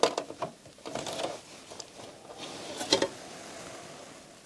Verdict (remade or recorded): recorded